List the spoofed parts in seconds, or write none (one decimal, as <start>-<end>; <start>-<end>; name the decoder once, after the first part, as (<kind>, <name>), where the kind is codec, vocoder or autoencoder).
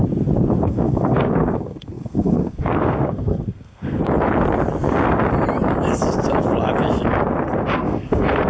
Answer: 0.6-4.0 (codec, SNAC); 7.7-8.5